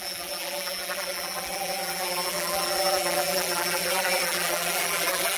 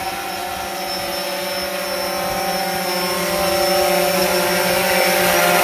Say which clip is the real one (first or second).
second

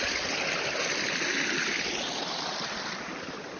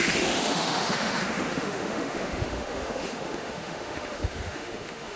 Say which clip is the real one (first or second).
first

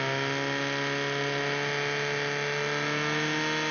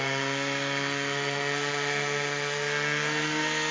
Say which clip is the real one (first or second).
first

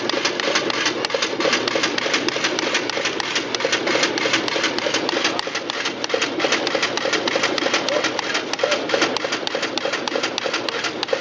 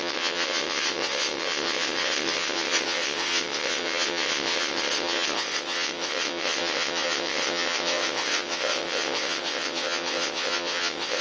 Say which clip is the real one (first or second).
first